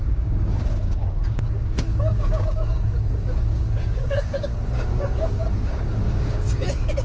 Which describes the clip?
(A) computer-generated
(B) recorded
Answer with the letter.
A